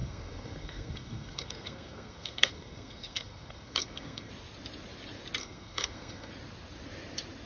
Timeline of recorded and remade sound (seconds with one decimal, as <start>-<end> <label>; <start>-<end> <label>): 0.0-4.3 remade; 4.3-5.4 recorded; 5.4-6.3 remade; 6.3-7.5 recorded

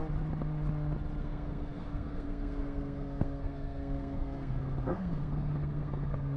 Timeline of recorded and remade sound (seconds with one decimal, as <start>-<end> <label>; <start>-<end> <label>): 0.0-1.2 recorded; 1.2-6.4 remade

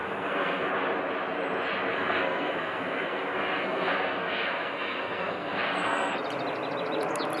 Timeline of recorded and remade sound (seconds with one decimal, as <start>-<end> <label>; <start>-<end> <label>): 0.0-0.7 remade; 0.7-1.9 recorded; 1.9-6.1 remade; 6.1-7.4 recorded

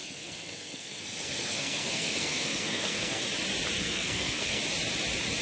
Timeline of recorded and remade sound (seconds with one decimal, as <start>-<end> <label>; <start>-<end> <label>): 0.0-3.2 remade; 3.2-3.8 recorded; 3.8-4.6 remade; 4.6-5.4 recorded

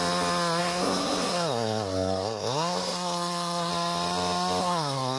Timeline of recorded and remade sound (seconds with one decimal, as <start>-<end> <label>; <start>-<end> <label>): 0.0-0.6 recorded; 0.6-3.7 remade; 3.7-4.6 recorded; 4.6-5.2 remade

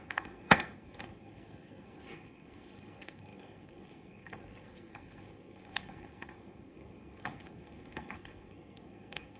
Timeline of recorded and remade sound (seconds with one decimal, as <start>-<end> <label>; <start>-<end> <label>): 0.0-9.4 remade

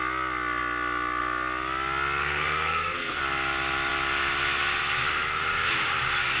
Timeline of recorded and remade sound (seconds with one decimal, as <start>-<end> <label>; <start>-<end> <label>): 0.0-2.2 recorded; 2.2-3.2 remade; 3.2-6.4 recorded

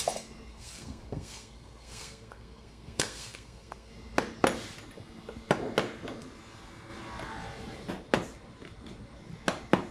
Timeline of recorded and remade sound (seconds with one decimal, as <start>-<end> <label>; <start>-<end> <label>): 0.0-0.5 recorded; 0.5-3.9 remade; 3.9-9.9 recorded